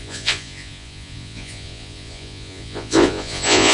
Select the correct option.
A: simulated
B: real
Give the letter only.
A